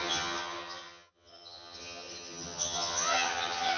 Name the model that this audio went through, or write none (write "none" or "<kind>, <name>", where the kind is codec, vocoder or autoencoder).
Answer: vocoder, HiFi-GAN